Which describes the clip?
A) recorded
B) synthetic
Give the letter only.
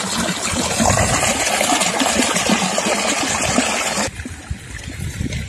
A